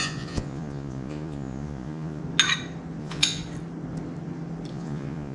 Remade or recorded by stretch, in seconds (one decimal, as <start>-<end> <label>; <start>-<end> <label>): 0.0-2.2 remade; 2.2-3.0 recorded; 3.0-3.4 remade; 3.4-4.7 recorded; 4.7-5.3 remade